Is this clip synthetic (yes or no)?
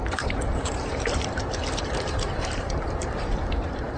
yes